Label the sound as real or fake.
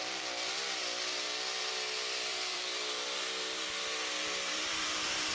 fake